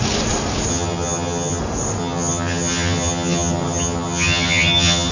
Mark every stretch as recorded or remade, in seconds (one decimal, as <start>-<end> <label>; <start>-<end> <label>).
0.0-0.7 recorded; 0.7-1.6 remade; 1.6-2.0 recorded; 2.0-5.1 remade